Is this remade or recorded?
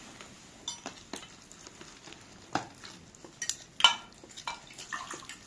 recorded